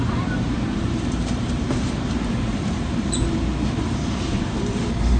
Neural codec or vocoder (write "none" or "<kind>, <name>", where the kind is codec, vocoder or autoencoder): vocoder, BigVGAN v2